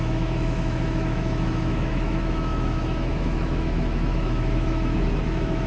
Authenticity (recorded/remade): remade